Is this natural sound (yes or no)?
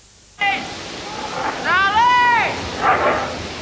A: yes